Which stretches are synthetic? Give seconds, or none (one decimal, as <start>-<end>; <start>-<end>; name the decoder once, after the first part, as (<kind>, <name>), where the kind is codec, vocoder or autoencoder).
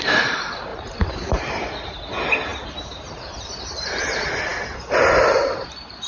0.0-6.1 (vocoder, BigVGAN v2)